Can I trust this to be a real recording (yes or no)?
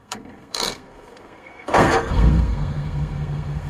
no